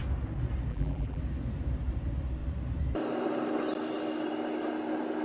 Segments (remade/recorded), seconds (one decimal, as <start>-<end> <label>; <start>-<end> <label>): 0.0-0.7 recorded; 0.7-1.2 remade; 1.2-5.2 recorded